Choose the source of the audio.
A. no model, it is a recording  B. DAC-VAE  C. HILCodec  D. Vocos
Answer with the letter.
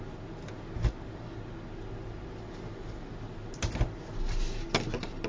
A